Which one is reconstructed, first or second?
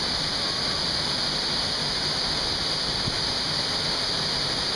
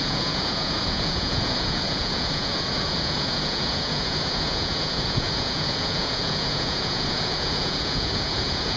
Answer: second